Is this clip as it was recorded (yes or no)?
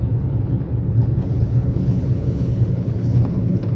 no